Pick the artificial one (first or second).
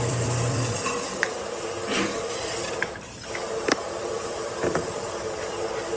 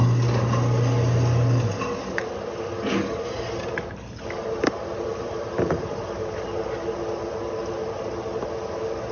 first